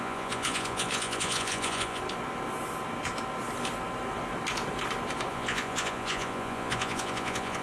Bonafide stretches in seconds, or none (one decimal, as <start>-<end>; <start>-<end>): 2.0-5.3